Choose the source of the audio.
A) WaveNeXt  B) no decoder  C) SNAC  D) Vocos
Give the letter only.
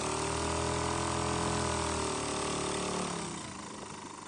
B